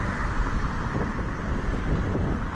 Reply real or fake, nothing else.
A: real